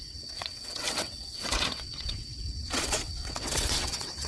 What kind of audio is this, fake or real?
fake